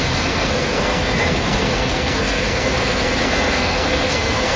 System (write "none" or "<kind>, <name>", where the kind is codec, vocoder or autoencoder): codec, SNAC